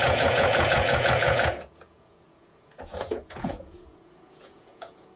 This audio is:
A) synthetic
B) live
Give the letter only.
A